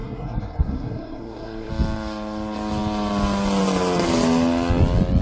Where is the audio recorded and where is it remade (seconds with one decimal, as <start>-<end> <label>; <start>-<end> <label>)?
0.0-1.7 remade; 1.7-5.2 recorded